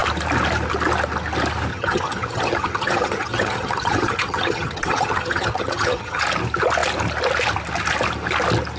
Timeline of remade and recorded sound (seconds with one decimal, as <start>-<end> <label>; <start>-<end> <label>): 0.0-1.7 recorded; 1.7-6.2 remade; 6.2-8.8 recorded